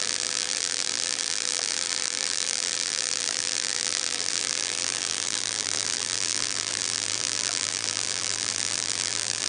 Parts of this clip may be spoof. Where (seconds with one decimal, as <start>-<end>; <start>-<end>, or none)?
0.0-9.5